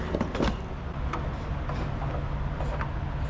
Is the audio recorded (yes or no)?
yes